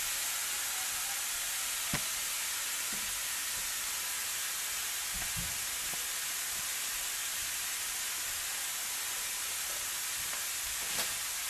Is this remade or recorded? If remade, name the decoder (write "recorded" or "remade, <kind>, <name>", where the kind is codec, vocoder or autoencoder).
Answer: recorded